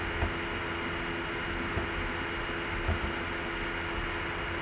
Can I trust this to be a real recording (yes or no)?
yes